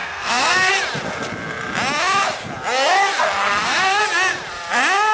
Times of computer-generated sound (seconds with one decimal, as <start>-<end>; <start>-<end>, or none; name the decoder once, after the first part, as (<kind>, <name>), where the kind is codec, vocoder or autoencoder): 0.0-0.7 (codec, SNAC); 3.4-4.0